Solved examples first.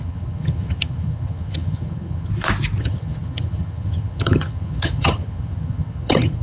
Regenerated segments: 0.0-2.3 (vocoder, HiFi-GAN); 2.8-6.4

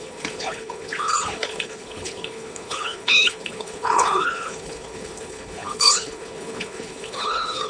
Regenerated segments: 0.0-7.7 (codec, HILCodec)

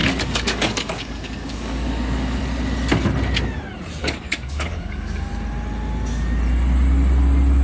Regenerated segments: 0.0-2.4 (codec, DAC); 4.0-5.3

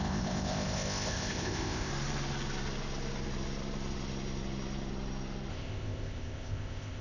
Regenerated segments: 0.0-1.9 (codec, ZipCodec); 5.5-7.0